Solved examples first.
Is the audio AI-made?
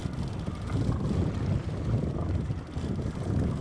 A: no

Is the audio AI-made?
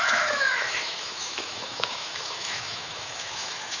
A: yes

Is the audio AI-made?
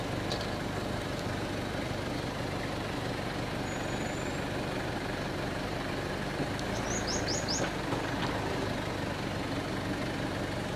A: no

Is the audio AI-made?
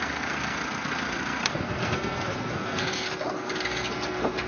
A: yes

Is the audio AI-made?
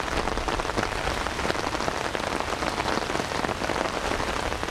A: no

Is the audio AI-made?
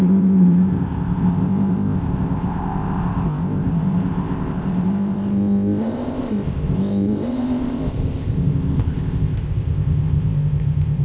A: yes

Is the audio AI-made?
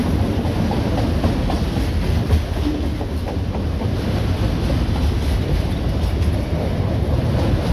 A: no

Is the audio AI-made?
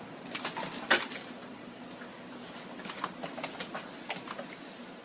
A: no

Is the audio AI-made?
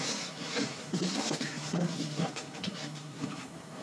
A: yes